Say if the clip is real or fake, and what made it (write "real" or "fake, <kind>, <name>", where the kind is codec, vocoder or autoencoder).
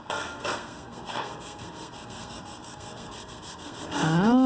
fake, codec, SNAC